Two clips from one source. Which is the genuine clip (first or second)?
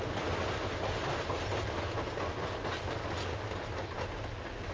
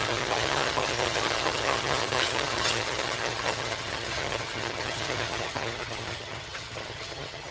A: first